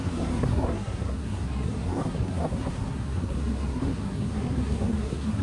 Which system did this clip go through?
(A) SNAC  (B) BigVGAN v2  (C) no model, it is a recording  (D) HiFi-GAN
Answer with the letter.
A